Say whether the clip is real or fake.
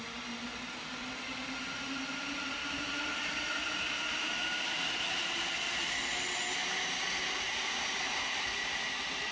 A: real